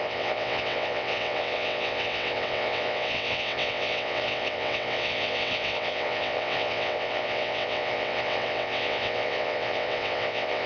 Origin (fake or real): fake